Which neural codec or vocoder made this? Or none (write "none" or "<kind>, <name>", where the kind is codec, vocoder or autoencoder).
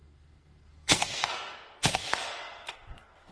codec, SNAC